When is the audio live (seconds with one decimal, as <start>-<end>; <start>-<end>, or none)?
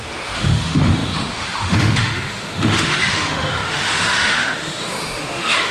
none